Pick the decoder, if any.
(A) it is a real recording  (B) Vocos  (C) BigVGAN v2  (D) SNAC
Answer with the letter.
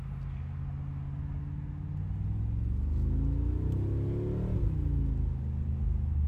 A